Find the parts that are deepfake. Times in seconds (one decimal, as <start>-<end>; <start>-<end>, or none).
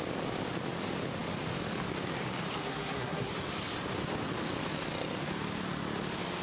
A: 2.6-3.3